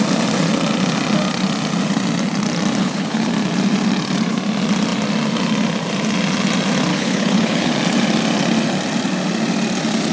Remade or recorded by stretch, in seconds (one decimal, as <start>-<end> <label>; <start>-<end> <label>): 0.0-2.8 recorded; 2.8-3.3 remade; 3.3-6.9 recorded; 6.9-7.7 remade; 7.7-10.1 recorded